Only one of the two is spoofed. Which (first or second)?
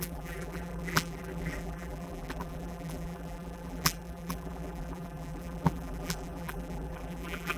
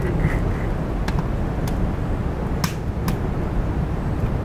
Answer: first